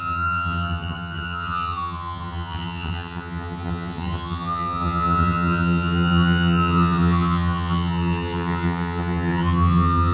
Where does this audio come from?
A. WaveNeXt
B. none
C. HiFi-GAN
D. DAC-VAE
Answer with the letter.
C